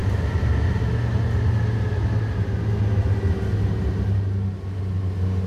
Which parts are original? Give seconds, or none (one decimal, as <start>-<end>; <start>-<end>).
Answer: 0.0-5.5